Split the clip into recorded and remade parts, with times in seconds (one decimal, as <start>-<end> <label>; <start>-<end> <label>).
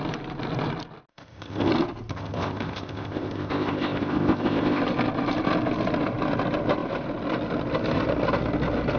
0.0-1.1 recorded; 1.1-1.7 remade; 1.7-2.1 recorded; 2.1-4.8 remade; 4.8-9.0 recorded